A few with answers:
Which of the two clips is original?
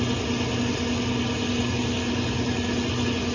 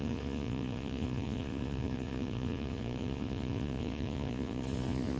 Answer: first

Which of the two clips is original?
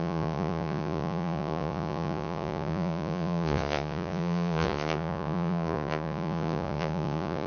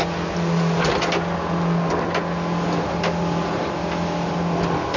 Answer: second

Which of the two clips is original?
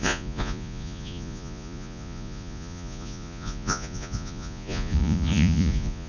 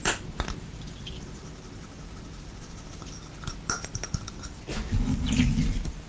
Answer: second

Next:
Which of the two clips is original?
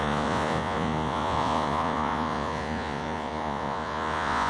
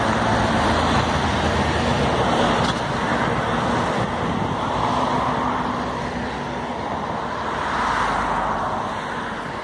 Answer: second